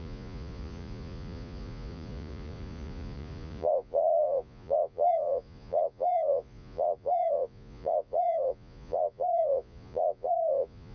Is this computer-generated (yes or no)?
yes